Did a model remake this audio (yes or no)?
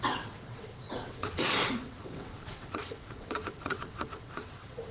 yes